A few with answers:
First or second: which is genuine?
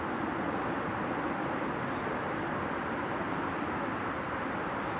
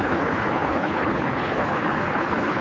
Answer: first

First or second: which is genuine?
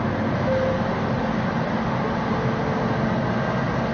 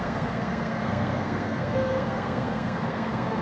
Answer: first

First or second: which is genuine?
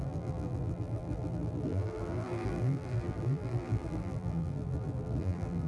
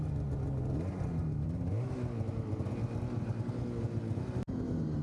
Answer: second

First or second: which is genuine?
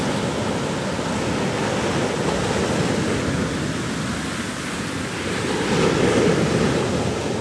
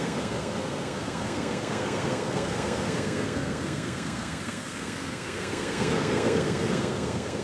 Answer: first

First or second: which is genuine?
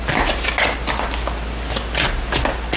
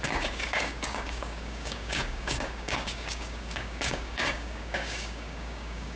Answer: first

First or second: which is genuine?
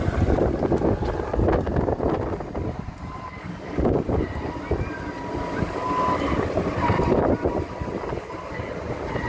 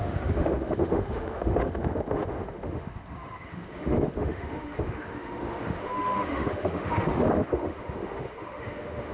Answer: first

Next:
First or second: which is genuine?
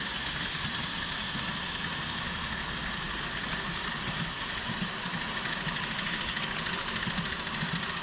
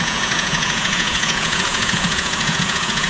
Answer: first